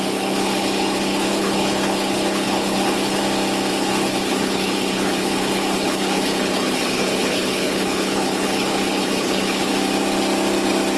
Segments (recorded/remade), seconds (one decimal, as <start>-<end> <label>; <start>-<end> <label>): 0.0-3.2 remade; 3.2-3.7 recorded; 3.7-9.7 remade; 9.7-11.0 recorded